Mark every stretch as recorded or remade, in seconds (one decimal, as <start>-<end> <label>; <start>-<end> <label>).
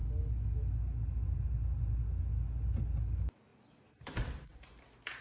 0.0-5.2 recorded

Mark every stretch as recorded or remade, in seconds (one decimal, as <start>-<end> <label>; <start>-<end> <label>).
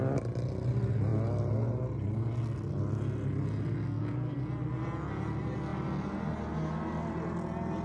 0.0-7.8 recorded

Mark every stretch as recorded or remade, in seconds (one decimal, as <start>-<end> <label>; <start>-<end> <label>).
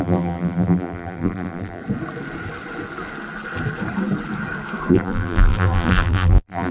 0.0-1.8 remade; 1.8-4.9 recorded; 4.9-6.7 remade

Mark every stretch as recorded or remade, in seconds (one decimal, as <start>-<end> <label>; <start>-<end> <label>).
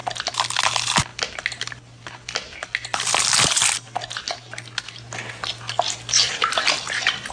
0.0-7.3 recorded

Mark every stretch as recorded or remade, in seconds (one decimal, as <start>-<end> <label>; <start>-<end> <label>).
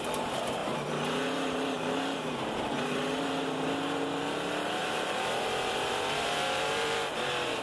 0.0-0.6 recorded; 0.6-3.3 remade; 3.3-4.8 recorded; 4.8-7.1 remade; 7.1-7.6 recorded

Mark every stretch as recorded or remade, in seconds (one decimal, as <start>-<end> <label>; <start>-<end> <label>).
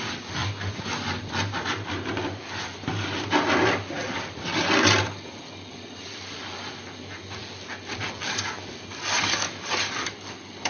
0.0-0.4 remade; 0.4-2.1 recorded; 2.1-10.7 remade